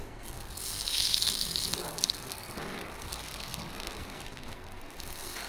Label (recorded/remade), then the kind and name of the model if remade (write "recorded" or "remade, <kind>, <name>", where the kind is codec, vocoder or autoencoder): remade, codec, SNAC